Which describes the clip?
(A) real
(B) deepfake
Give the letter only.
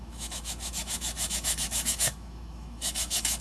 B